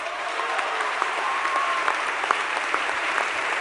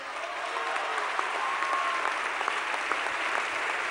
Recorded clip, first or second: second